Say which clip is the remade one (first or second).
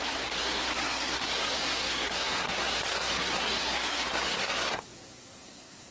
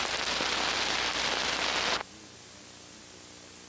first